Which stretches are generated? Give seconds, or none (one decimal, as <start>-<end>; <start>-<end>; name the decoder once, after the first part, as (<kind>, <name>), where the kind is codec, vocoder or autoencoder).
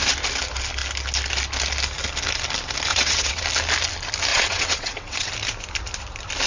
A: 2.9-3.4 (vocoder, WaveNeXt); 4.3-5.3